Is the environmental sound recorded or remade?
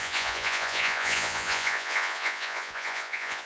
remade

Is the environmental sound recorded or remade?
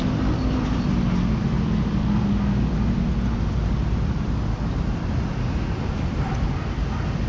recorded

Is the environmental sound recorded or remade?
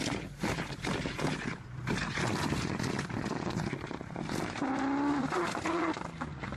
recorded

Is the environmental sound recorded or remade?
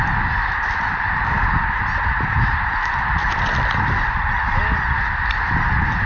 recorded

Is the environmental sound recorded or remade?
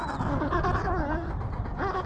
recorded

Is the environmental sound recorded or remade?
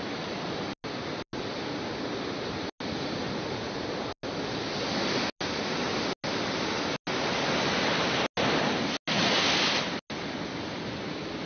recorded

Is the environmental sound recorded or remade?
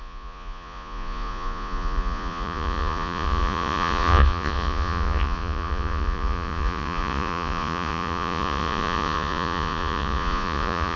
remade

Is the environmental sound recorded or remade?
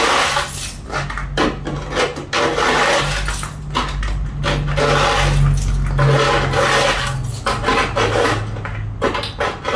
recorded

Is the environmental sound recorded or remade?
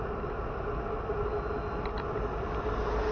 recorded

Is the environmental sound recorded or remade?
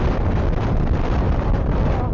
recorded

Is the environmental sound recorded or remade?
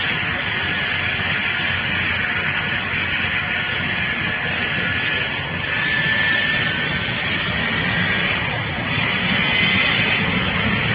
recorded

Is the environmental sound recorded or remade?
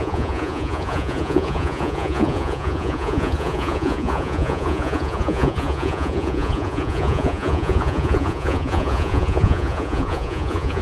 remade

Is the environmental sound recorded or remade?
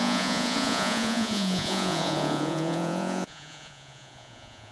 remade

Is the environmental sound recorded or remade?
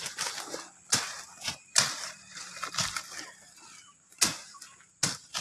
recorded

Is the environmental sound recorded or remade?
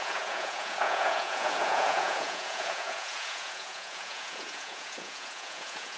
remade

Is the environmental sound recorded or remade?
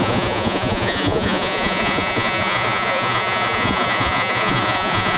remade